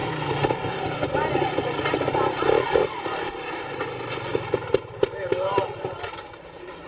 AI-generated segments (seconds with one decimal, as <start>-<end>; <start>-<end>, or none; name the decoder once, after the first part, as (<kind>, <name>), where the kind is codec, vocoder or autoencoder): 1.3-6.9 (vocoder, BigVGAN v2)